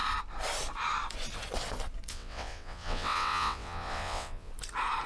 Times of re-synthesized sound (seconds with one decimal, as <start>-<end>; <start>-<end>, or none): 2.1-4.5